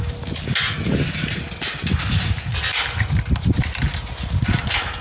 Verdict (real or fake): real